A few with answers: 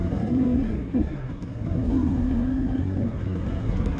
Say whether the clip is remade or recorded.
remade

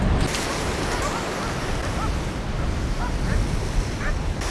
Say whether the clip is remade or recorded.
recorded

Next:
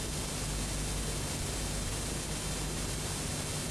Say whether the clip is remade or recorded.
recorded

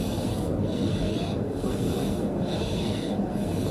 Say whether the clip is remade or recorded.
remade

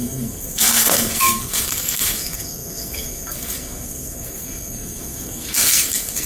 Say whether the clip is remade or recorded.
remade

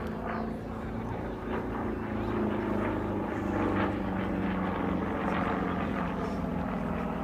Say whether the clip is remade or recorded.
recorded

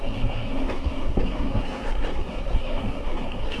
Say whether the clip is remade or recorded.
remade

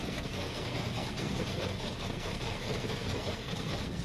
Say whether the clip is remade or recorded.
remade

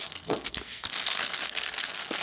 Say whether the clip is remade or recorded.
remade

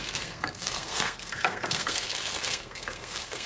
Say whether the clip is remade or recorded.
remade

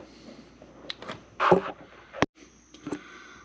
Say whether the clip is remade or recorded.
recorded